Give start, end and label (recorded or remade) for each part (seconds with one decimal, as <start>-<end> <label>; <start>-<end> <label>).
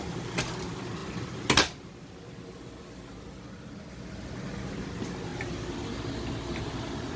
0.0-7.2 recorded